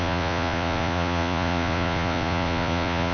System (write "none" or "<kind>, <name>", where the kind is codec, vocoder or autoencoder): vocoder, Vocos